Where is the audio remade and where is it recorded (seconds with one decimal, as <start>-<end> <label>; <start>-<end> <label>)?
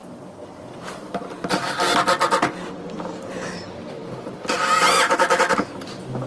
0.0-6.3 remade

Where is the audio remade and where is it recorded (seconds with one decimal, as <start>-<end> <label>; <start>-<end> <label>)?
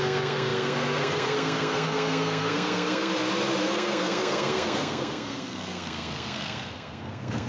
0.0-3.1 remade; 3.1-3.6 recorded; 3.6-7.5 remade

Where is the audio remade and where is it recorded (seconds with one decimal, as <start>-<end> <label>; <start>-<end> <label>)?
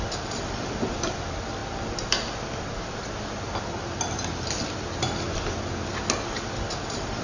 0.0-7.2 recorded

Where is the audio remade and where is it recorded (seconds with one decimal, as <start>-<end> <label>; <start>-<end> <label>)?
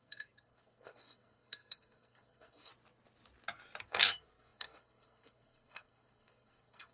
0.0-2.7 remade; 2.7-3.9 recorded; 3.9-6.9 remade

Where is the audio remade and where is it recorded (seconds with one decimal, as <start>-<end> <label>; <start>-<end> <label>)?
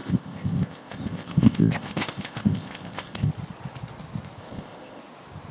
0.0-3.3 remade; 3.3-4.4 recorded; 4.4-5.0 remade; 5.0-5.5 recorded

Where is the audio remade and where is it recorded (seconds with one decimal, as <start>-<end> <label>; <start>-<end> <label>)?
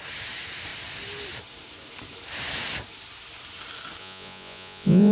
0.0-4.0 recorded; 4.0-5.1 remade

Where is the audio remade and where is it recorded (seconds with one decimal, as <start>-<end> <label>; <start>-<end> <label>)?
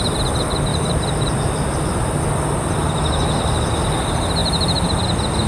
0.0-0.7 recorded; 0.7-1.3 remade; 1.3-5.5 recorded